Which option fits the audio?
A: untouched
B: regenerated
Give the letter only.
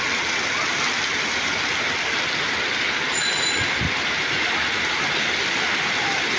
A